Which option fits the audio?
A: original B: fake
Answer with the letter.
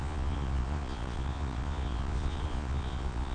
B